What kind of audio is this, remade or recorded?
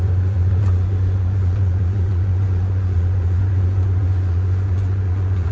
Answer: remade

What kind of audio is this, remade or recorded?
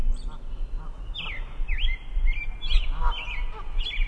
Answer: recorded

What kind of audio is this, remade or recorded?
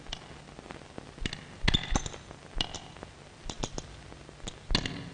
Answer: recorded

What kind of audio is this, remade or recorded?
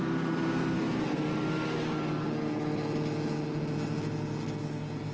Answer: recorded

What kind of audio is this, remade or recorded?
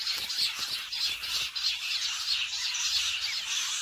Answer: recorded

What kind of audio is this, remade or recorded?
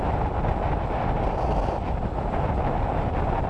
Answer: recorded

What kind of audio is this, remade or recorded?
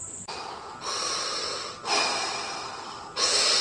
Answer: recorded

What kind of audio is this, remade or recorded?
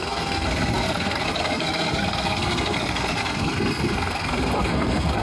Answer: remade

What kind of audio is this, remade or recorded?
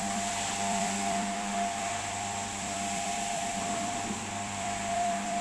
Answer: remade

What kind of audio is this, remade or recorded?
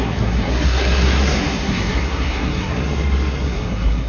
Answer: remade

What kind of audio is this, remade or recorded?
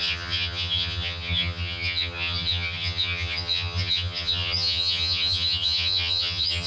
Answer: remade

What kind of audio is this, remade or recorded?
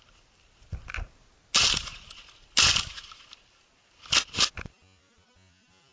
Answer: recorded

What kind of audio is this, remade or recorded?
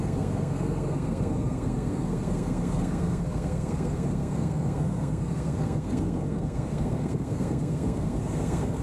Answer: remade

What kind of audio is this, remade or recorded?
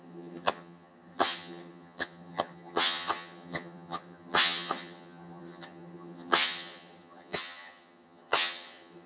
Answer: remade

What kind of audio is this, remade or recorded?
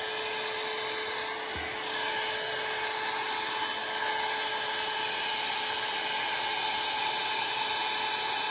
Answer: recorded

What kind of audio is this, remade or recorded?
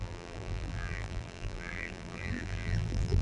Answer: remade